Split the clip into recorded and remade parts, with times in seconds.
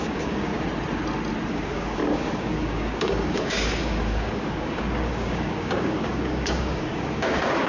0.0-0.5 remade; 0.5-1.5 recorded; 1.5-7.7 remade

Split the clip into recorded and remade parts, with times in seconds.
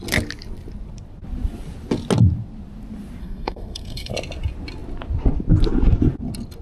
0.0-3.2 recorded; 3.2-4.1 remade; 4.1-6.6 recorded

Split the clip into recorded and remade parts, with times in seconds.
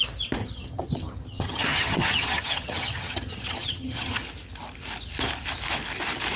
0.0-0.4 recorded; 0.4-4.2 remade; 4.2-6.4 recorded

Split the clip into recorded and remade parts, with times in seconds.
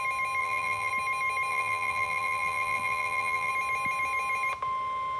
0.0-0.4 recorded; 0.4-0.9 remade; 0.9-1.5 recorded; 1.5-3.5 remade; 3.5-5.2 recorded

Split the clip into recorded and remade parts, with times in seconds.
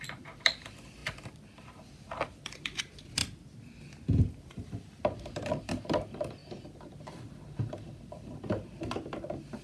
0.0-3.2 remade; 3.2-4.3 recorded; 4.3-9.6 remade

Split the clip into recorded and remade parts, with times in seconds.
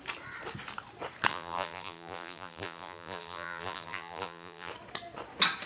0.0-1.3 recorded; 1.3-4.7 remade; 4.7-5.7 recorded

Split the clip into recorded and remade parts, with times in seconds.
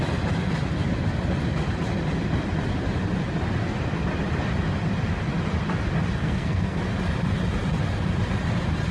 0.0-6.2 recorded; 6.2-6.8 remade; 6.8-8.9 recorded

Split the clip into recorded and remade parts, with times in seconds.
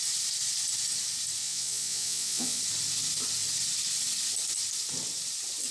0.0-1.4 recorded; 1.4-2.6 remade; 2.6-5.7 recorded